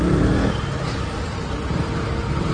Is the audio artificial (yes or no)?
no